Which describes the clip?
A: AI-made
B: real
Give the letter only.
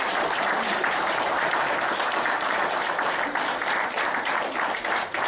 A